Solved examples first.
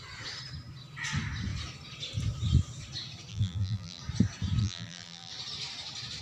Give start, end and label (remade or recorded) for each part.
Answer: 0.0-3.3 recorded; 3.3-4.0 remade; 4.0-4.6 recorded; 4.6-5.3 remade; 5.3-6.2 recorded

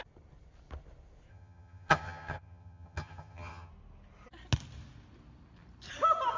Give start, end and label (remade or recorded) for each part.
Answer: 0.0-1.3 recorded; 1.3-3.7 remade; 3.7-6.4 recorded

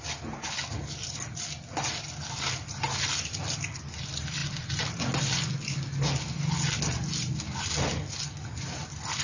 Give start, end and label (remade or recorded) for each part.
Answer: 0.0-9.2 recorded

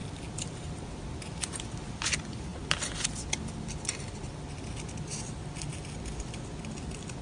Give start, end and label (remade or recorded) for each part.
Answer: 0.0-1.6 remade; 1.6-7.2 recorded

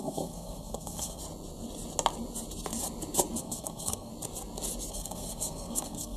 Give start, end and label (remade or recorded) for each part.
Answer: 0.0-1.2 remade; 1.2-3.4 recorded; 3.4-4.1 remade; 4.1-4.9 recorded; 4.9-6.2 remade

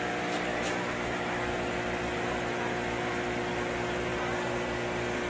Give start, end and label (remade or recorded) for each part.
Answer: 0.0-0.5 recorded; 0.5-1.5 remade; 1.5-5.3 recorded

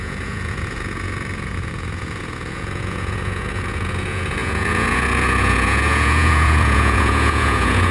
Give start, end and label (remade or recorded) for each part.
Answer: 0.0-7.9 remade

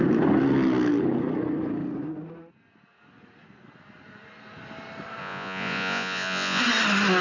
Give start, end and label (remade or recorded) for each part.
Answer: 0.0-5.2 recorded; 5.2-6.6 remade; 6.6-7.2 recorded